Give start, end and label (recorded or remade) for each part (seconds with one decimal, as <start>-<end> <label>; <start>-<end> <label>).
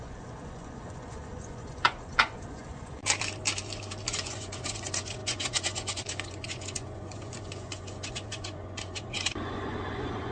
0.0-3.0 remade; 3.0-4.1 recorded; 4.1-10.3 remade